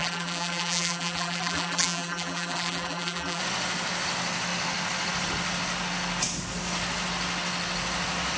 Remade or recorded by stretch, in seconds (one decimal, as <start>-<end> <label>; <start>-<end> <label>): 0.0-3.4 remade; 3.4-8.4 recorded